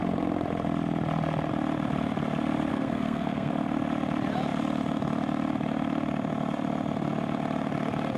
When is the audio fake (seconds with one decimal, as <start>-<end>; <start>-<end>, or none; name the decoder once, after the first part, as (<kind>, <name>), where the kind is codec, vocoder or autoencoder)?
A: 2.7-3.5 (codec, SNAC)